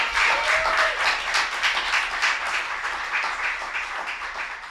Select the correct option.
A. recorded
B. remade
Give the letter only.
A